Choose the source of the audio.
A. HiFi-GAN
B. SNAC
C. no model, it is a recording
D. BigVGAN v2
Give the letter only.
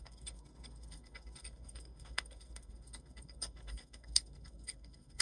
B